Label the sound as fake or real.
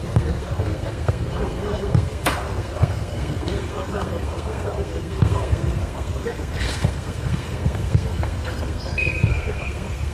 fake